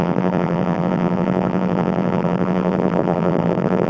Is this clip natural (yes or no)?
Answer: no